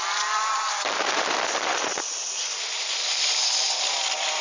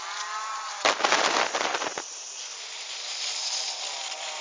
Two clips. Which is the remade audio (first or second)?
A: first